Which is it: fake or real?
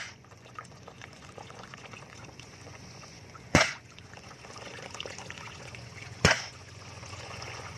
fake